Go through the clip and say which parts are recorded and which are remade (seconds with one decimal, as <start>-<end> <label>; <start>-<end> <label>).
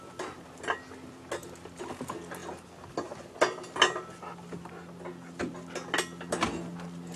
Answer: 0.0-7.2 recorded